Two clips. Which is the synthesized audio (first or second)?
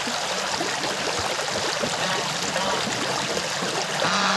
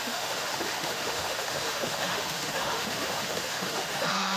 second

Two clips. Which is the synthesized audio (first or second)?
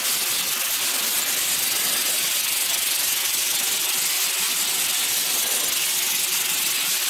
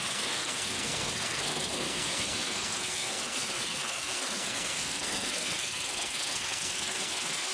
second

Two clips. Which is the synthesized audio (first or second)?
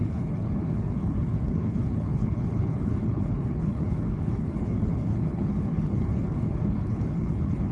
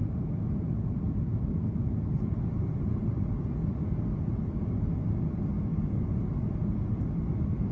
first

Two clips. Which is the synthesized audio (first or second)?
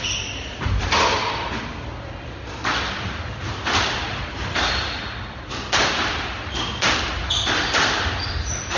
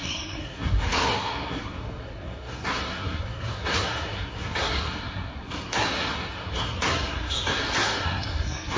second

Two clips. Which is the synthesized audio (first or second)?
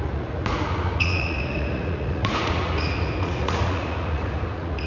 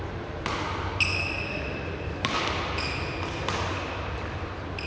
first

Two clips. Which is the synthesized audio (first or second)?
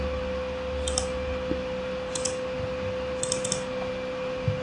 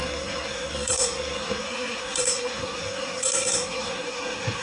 second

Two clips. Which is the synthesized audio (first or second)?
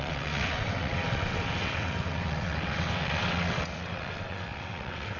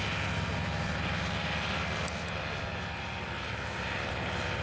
first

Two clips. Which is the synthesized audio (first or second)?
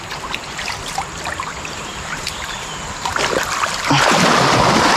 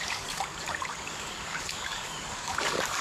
second